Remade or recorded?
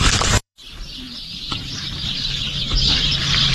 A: remade